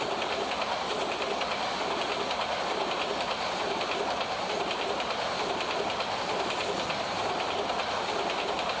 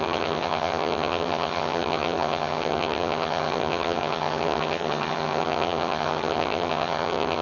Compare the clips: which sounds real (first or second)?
first